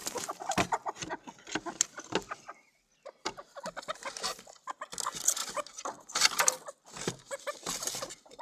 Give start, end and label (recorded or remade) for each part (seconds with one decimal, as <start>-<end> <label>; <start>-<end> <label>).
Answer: 0.0-8.4 recorded